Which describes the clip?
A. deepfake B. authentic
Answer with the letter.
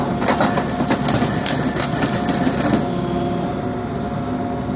B